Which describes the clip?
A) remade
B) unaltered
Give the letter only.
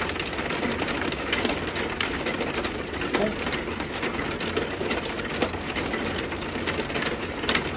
B